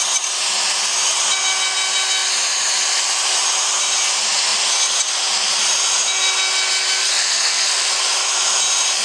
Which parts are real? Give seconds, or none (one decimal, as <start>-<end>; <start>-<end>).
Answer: 0.0-7.0; 7.9-9.0